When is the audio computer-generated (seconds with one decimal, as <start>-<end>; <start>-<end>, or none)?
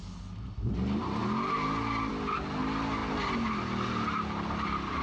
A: none